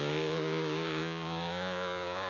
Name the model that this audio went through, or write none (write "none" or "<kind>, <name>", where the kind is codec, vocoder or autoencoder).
codec, DAC